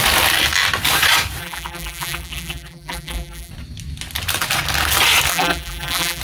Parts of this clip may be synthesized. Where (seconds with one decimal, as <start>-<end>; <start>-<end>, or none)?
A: 1.4-3.5; 5.3-6.2